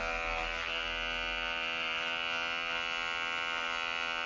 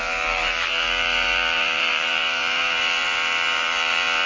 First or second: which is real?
first